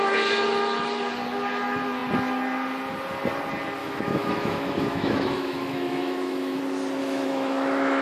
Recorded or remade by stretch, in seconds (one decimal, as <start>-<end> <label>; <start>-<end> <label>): 0.0-3.8 recorded; 3.8-6.6 remade; 6.6-7.0 recorded; 7.0-8.0 remade